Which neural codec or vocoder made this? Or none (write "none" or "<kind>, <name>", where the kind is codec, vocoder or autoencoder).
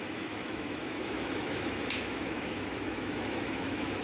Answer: autoencoder, DAC-VAE